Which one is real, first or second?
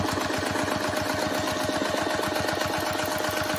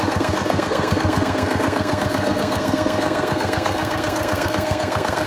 first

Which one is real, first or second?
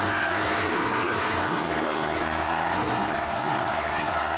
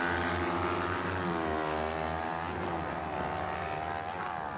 second